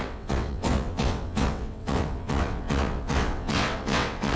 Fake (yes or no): yes